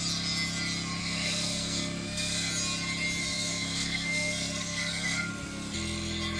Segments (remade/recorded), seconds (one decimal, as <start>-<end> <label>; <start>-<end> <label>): 0.0-1.0 recorded; 1.0-2.5 remade; 2.5-3.2 recorded; 3.2-5.3 remade; 5.3-6.4 recorded